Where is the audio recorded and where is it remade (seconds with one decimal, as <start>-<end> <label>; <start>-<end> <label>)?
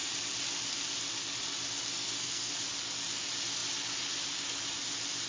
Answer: 0.0-1.9 recorded; 1.9-2.5 remade; 2.5-5.3 recorded